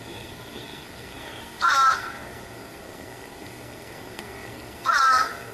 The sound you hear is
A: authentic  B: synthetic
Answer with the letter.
B